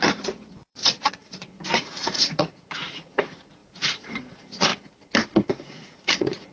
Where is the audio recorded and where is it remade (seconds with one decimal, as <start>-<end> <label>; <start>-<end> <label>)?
0.0-4.7 remade; 4.7-5.5 recorded; 5.5-6.5 remade